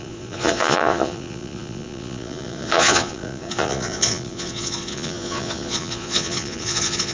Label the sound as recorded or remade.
remade